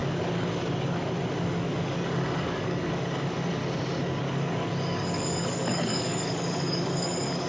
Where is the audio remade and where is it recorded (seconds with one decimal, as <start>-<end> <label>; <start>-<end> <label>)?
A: 0.0-3.6 remade; 3.6-4.2 recorded; 4.2-7.5 remade